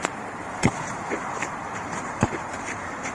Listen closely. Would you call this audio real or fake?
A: fake